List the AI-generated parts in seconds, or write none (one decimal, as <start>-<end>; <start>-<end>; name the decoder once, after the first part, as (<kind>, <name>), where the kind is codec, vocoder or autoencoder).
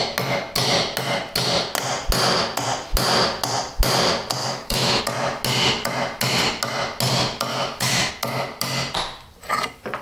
4.4-5.0 (autoencoder, DAC-VAE); 7.5-8.1